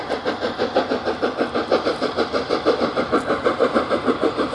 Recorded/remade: recorded